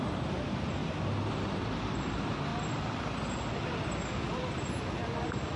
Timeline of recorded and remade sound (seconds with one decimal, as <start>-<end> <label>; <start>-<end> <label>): 0.0-0.8 remade; 0.8-1.3 recorded; 1.3-2.5 remade; 2.5-5.6 recorded